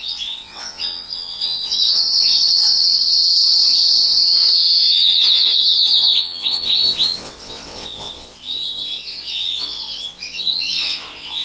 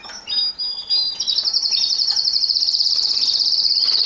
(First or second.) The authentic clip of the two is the second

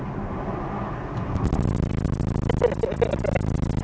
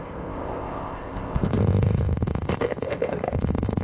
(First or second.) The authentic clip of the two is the first